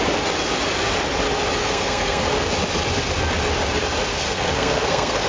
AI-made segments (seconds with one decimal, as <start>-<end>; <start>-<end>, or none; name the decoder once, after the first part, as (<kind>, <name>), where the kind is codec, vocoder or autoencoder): 1.6-2.2 (codec, SNAC); 4.1-5.3